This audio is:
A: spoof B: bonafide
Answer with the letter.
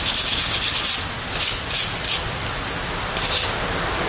B